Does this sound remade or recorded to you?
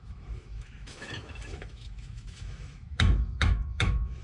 remade